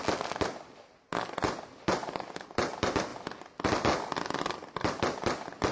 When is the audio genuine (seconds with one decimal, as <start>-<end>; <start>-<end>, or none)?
0.0-5.7